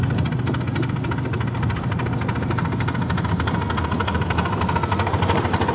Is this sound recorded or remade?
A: recorded